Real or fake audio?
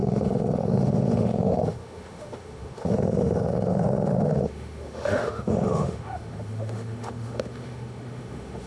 fake